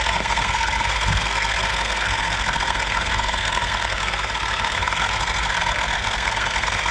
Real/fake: fake